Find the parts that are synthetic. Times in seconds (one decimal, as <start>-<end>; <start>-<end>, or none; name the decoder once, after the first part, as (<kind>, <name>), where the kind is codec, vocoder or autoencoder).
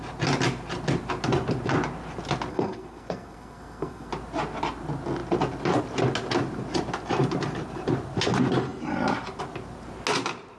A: 2.5-4.1 (codec, SNAC)